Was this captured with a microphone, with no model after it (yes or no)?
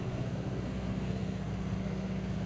no